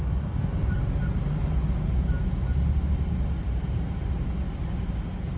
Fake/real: real